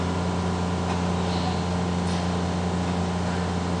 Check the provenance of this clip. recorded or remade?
recorded